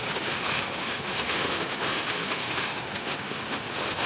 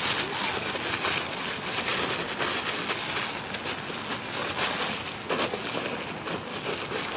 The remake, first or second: first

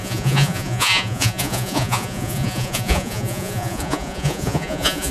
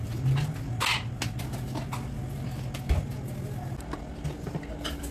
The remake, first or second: first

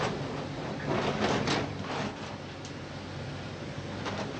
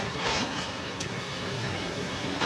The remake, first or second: second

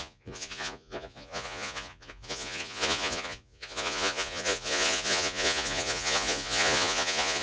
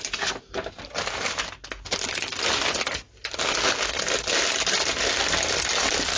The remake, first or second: first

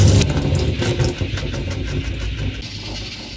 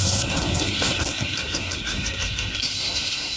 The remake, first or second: second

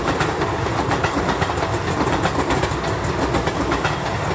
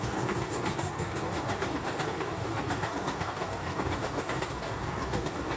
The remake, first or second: second